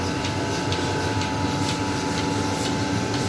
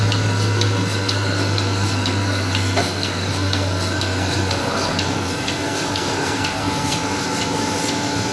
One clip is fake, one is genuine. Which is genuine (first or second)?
first